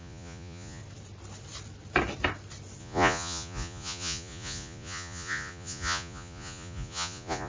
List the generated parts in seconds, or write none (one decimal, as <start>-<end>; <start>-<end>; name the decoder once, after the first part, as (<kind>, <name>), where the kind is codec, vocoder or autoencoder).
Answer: 0.0-0.8 (vocoder, Vocos); 2.8-7.5